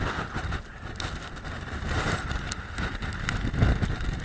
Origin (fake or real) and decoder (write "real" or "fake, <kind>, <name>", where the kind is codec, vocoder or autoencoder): real